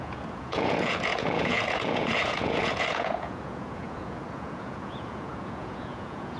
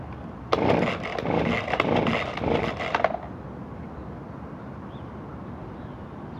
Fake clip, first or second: first